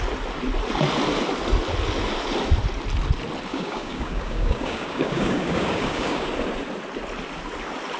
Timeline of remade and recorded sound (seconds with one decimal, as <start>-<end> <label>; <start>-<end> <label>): 0.0-3.5 recorded; 3.5-6.3 remade; 6.3-8.0 recorded